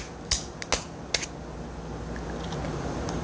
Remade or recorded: recorded